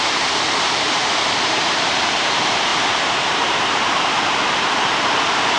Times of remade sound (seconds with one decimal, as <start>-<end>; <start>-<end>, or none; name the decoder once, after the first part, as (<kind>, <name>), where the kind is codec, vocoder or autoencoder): 0.0-5.6 (vocoder, BigVGAN v2)